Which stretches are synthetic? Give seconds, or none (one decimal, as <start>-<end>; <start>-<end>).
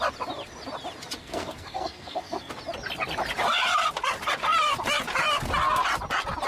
1.2-2.5